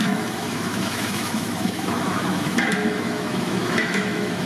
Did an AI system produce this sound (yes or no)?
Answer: yes